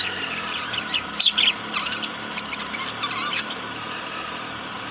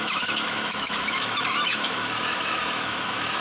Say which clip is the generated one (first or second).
second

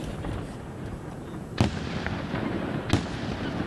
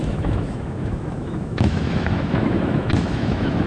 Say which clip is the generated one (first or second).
second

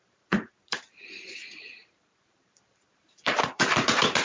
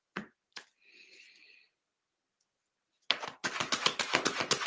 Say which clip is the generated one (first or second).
first